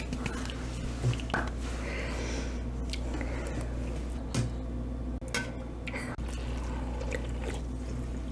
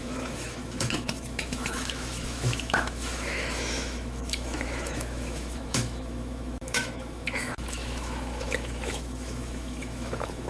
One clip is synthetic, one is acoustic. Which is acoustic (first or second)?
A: first